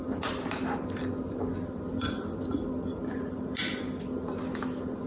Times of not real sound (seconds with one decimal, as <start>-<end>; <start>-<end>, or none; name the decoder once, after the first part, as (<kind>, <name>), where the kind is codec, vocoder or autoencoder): none